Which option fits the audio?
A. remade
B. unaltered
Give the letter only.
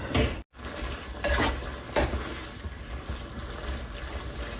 B